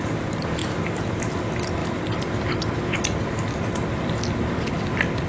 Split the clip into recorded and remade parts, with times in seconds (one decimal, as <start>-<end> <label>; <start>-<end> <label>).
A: 0.0-0.6 recorded; 0.6-1.4 remade; 1.4-1.8 recorded; 1.8-2.3 remade; 2.3-5.3 recorded